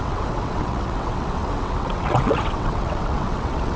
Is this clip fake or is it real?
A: fake